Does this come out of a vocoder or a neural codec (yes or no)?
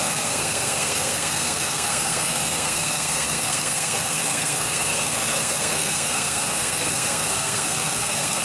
yes